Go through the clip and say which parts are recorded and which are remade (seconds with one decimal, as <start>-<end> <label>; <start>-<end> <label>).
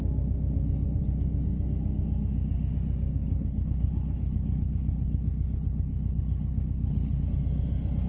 0.0-3.2 recorded; 3.2-7.3 remade; 7.3-8.1 recorded